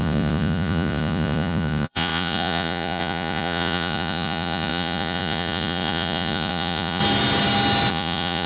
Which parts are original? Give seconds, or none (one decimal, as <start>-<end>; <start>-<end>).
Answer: 7.0-7.9